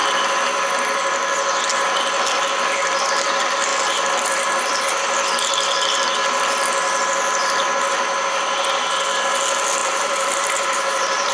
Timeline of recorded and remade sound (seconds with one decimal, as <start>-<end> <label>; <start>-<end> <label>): 0.0-9.8 recorded; 9.8-11.3 remade